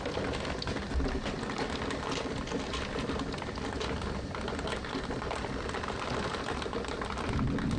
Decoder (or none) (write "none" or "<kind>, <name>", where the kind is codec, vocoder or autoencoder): none